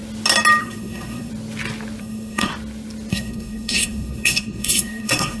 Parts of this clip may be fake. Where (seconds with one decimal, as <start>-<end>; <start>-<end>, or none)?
0.6-1.3; 2.0-2.5; 3.1-5.4

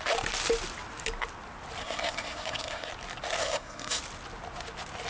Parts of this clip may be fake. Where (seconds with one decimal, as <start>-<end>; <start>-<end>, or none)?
1.8-2.9; 3.4-4.0

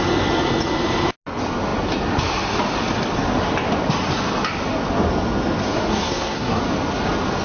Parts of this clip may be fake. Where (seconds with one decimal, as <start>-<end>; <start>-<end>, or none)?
5.9-6.6

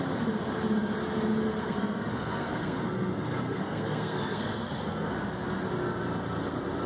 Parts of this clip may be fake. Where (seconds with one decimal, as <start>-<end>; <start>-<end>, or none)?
1.5-5.1

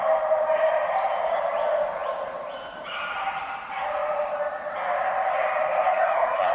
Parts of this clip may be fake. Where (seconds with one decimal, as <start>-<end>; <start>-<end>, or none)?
5.9-6.5

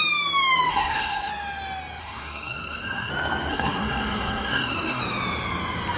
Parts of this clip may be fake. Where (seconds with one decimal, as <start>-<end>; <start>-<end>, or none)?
0.7-1.3; 2.0-3.1; 3.5-5.0

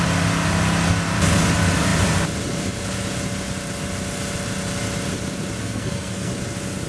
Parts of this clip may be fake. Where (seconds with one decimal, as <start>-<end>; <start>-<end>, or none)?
5.6-6.3